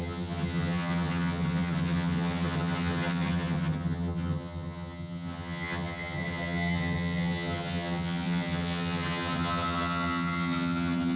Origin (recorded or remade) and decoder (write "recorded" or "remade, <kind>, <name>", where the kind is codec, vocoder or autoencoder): remade, vocoder, HiFi-GAN